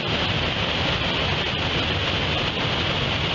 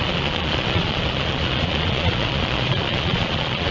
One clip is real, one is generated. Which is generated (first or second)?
second